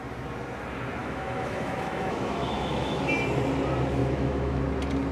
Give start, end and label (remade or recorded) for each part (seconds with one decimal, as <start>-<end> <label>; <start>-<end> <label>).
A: 0.0-1.0 recorded; 1.0-3.0 remade; 3.0-4.0 recorded; 4.0-4.6 remade; 4.6-5.1 recorded